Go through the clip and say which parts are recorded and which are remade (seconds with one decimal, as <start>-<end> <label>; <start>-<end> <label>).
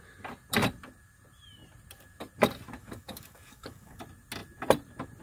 0.0-2.8 recorded; 2.8-4.0 remade; 4.0-5.2 recorded